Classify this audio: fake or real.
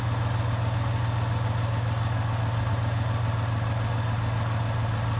real